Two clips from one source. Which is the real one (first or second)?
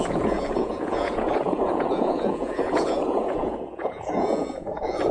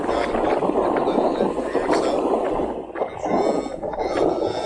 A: second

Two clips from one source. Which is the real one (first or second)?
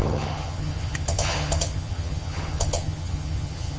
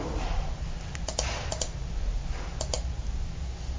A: second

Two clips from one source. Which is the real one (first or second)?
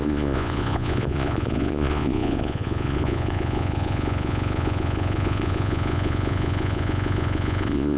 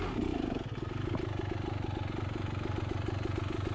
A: second